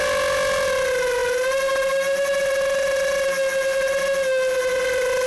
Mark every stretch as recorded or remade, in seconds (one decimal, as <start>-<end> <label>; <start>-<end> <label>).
0.0-5.3 recorded